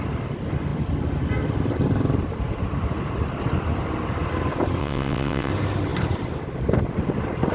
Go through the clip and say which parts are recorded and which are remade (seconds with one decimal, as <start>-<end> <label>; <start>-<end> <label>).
0.0-4.8 recorded; 4.8-5.5 remade; 5.5-7.5 recorded

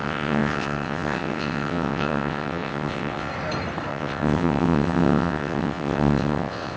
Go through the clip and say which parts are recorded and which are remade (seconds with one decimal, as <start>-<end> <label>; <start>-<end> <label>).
0.0-3.3 remade; 3.3-3.9 recorded; 3.9-6.8 remade

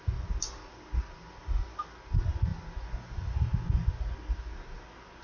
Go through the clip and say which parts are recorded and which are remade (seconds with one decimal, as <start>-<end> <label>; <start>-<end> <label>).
0.0-5.2 recorded

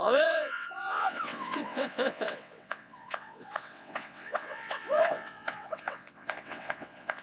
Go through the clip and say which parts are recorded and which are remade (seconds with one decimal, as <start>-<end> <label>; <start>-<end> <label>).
0.0-7.2 remade

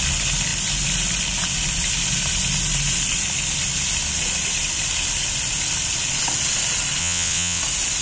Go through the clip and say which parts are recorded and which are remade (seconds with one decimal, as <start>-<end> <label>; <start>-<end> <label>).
0.0-7.0 recorded; 7.0-7.6 remade; 7.6-8.0 recorded

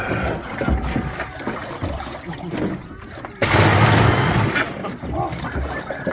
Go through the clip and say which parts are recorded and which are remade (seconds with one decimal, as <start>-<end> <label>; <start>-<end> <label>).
0.0-6.1 recorded